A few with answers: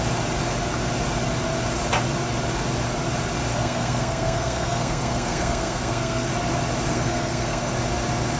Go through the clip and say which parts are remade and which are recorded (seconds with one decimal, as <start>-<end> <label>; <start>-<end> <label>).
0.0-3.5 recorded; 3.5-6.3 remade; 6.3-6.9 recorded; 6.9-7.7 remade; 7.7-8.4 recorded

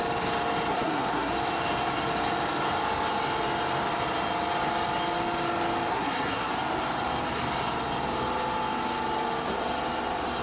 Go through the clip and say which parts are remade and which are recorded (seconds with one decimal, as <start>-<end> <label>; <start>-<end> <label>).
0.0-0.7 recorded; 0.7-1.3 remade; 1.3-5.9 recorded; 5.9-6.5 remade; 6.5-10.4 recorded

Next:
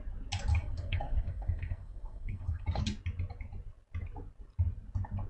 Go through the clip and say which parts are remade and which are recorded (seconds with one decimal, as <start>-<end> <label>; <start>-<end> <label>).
0.0-0.5 recorded; 0.5-2.8 remade; 2.8-5.3 recorded

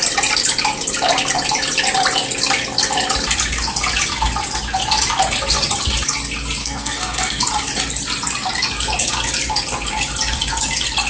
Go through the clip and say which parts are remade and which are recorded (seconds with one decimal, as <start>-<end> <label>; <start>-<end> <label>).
0.0-6.6 recorded; 6.6-7.4 remade; 7.4-11.1 recorded

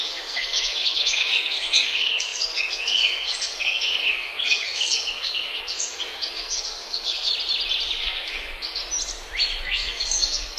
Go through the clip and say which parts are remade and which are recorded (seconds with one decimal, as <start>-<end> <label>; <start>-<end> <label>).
0.0-7.3 remade; 7.3-8.0 recorded; 8.0-8.8 remade; 8.8-9.6 recorded; 9.6-10.6 remade

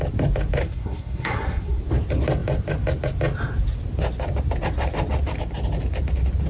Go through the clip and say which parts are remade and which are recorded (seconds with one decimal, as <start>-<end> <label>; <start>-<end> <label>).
0.0-0.6 recorded; 0.6-1.8 remade; 1.8-6.5 recorded

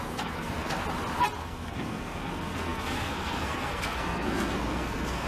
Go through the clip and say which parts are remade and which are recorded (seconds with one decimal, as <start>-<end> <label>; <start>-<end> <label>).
0.0-0.8 remade; 0.8-1.4 recorded; 1.4-5.3 remade